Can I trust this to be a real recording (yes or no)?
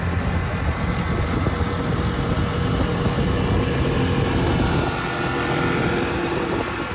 yes